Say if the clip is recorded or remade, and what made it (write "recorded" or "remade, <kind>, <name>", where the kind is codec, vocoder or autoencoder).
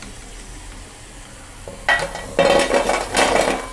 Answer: recorded